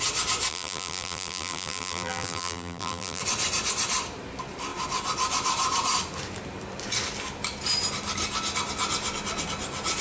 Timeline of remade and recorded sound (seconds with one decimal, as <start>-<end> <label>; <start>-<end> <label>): 0.0-0.5 recorded; 0.5-3.2 remade; 3.2-10.0 recorded